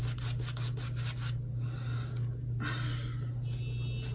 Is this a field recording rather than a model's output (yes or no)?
yes